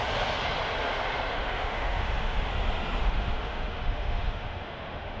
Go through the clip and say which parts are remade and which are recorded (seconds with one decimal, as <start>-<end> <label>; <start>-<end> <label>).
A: 0.0-1.3 recorded; 1.3-2.5 remade; 2.5-3.0 recorded; 3.0-5.2 remade